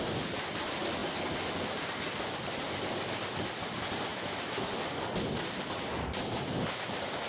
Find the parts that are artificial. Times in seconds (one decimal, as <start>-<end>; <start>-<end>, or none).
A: 4.1-4.7